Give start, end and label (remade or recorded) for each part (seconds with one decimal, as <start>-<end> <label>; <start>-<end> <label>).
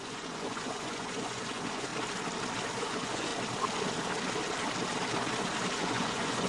0.0-1.9 remade; 1.9-2.8 recorded; 2.8-3.3 remade; 3.3-5.8 recorded; 5.8-6.5 remade